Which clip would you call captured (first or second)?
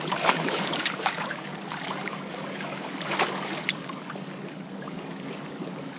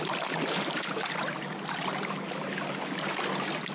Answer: second